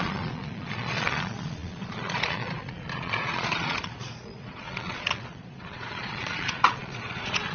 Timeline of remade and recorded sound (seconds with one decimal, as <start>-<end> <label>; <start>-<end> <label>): 0.0-7.5 remade